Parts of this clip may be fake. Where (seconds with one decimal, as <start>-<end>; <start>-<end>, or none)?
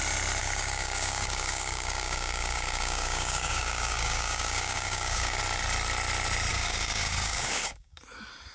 0.4-5.4; 6.5-8.0